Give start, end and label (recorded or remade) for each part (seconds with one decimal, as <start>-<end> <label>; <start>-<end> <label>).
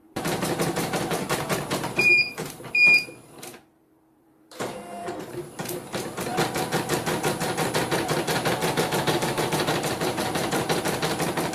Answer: 0.0-2.7 remade; 2.7-3.7 recorded; 3.7-5.6 remade; 5.6-8.6 recorded; 8.6-10.8 remade; 10.8-11.5 recorded